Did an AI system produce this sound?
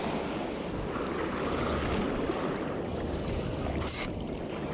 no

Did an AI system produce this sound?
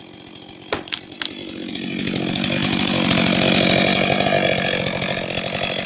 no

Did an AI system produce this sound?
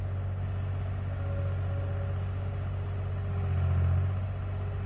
no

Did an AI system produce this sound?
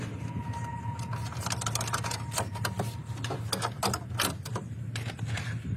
no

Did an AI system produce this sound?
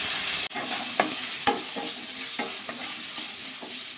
no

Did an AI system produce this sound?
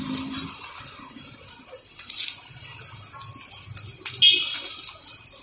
no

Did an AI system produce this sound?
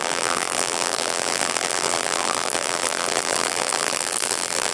yes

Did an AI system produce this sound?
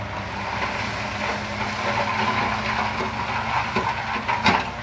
no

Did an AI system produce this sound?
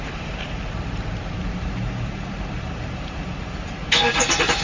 yes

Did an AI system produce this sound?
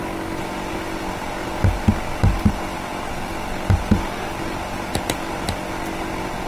no